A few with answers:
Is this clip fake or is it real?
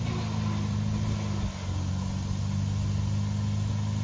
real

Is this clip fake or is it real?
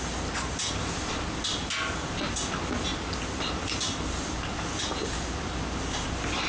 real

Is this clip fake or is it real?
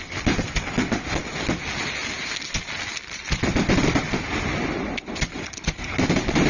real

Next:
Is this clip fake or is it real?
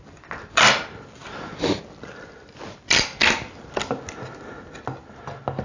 real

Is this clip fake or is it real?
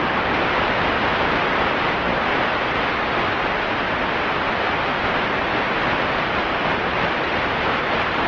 real